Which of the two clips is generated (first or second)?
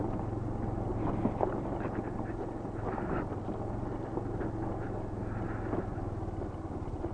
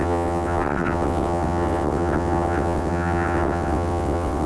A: second